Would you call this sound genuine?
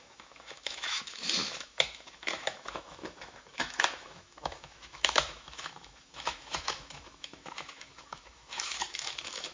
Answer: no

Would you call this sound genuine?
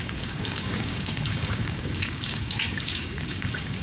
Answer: no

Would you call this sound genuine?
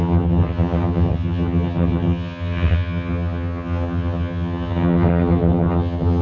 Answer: no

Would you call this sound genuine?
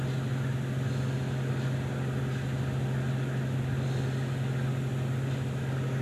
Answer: yes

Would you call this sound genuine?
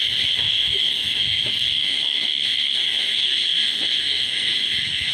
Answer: no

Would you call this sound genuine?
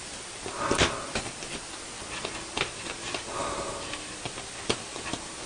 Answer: yes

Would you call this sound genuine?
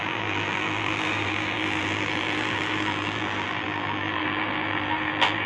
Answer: no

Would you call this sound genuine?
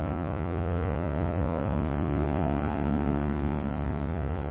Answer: no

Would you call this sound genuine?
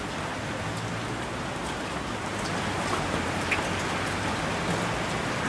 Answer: yes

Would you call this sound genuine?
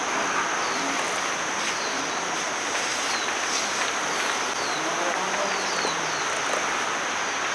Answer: yes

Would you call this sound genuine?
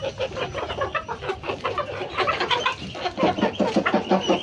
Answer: yes